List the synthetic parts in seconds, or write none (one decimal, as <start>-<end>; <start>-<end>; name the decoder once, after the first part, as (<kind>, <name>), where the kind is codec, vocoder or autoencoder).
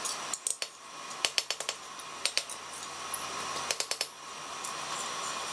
0.5-3.8 (vocoder, BigVGAN v2)